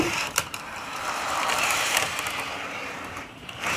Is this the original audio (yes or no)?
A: no